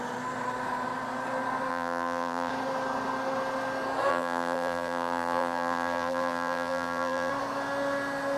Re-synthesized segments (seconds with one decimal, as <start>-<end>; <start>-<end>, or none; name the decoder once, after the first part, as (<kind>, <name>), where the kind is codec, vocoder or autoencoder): 1.7-2.5 (vocoder, BigVGAN v2); 4.1-7.3